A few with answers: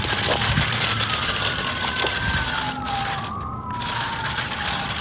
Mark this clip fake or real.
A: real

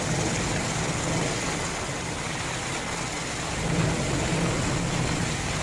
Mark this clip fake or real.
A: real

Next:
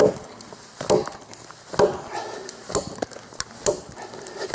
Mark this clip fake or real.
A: real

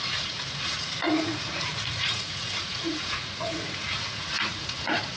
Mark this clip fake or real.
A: fake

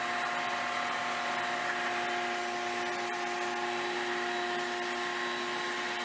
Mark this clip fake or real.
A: real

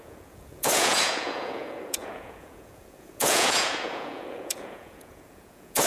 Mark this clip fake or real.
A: fake